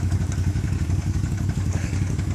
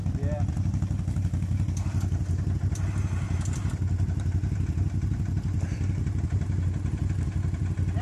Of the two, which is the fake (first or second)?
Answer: first